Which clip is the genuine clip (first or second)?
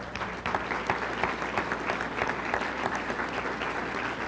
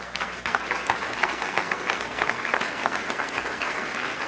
first